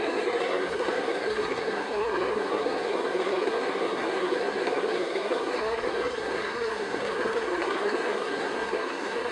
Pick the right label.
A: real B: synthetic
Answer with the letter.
B